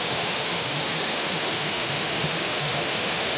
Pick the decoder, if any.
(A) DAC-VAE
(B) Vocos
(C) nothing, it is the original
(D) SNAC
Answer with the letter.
A